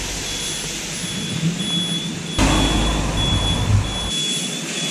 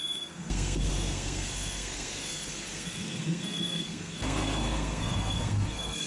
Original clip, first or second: first